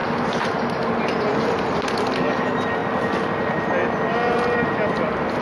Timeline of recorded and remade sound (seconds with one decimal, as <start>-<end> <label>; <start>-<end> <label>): 0.0-5.4 recorded